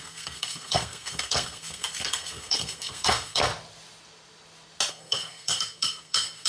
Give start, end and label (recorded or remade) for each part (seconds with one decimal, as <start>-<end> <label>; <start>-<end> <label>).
0.0-3.5 remade; 3.5-4.9 recorded; 4.9-6.5 remade